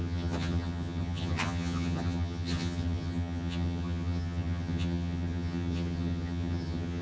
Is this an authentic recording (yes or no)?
no